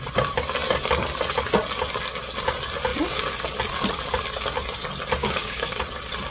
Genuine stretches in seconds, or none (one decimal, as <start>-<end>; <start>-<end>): 0.0-5.2; 5.8-6.3